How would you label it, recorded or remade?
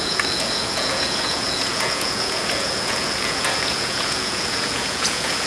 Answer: remade